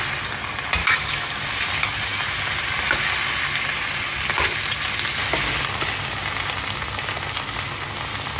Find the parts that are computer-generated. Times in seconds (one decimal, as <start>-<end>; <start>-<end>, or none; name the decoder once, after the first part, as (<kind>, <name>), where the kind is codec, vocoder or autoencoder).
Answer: 0.8-1.3 (autoencoder, DAC-VAE)